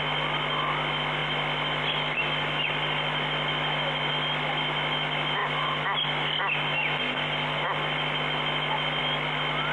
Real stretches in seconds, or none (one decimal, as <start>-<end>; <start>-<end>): 0.0-9.7